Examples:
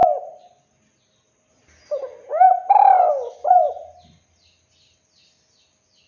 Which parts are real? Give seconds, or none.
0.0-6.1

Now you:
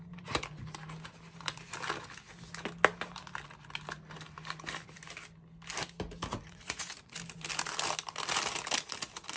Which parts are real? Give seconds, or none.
0.0-6.3; 7.1-9.4

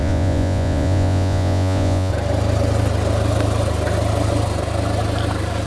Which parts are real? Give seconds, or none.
2.1-5.7